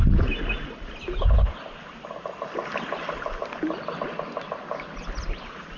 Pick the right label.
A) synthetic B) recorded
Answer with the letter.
B